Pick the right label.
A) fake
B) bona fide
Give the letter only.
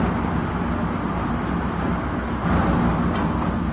B